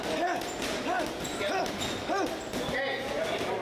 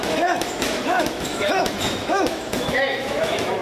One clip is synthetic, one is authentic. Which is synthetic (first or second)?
second